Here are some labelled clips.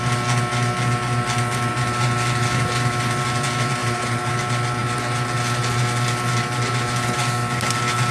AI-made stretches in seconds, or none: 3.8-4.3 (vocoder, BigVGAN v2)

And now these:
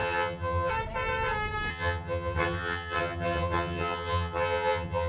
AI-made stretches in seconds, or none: 0.0-0.7 (vocoder, HiFi-GAN); 1.7-5.1

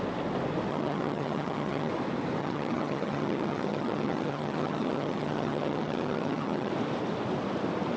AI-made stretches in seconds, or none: 0.7-1.9 (vocoder, HiFi-GAN); 2.4-6.7

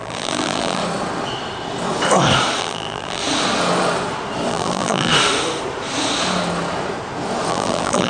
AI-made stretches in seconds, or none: 0.0-0.8 (vocoder, BigVGAN v2); 2.6-3.2; 4.5-5.1; 7.5-8.1

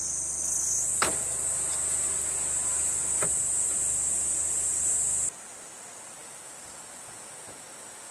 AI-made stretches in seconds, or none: none

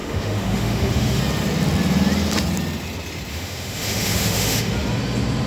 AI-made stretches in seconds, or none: 0.0-1.2 (autoencoder, DAC-VAE); 3.3-4.7